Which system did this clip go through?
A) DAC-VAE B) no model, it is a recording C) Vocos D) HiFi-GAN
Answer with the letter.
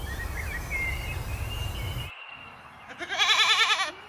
B